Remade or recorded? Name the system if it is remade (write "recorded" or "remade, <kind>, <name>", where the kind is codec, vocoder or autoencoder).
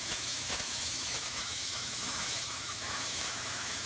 remade, autoencoder, DAC-VAE